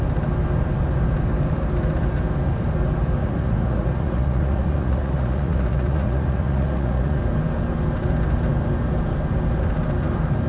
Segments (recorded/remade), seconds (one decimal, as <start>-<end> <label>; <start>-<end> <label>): 0.0-3.2 recorded; 3.2-7.2 remade; 7.2-10.5 recorded